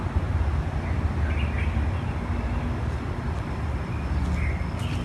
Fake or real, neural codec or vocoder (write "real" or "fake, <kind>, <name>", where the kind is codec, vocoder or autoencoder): real